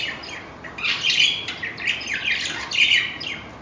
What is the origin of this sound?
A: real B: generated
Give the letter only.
A